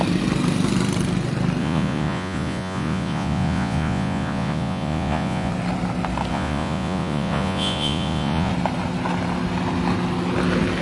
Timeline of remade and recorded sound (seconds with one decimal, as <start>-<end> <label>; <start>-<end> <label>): 0.0-1.6 recorded; 1.6-5.5 remade; 5.5-6.3 recorded; 6.3-8.5 remade; 8.5-10.8 recorded